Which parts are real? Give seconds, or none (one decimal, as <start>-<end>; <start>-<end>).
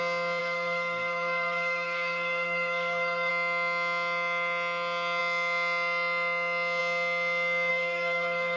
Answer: 0.0-0.4; 3.3-7.7